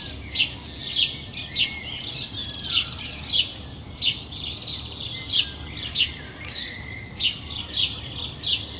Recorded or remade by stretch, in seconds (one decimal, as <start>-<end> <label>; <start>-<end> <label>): 0.0-8.8 recorded